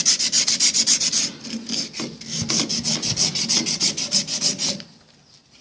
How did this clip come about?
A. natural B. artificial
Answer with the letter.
A